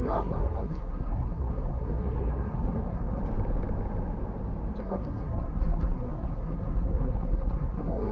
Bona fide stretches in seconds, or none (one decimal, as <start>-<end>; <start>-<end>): 3.2-4.8